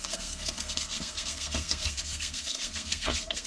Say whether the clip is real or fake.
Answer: fake